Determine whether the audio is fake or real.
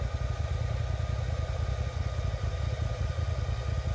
real